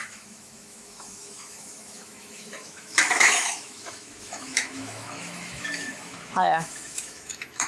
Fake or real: fake